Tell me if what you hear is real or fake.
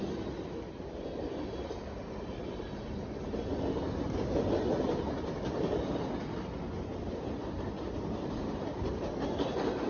real